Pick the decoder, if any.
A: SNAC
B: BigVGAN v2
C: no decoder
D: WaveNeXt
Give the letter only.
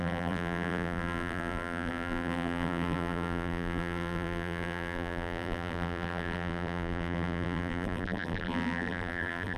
B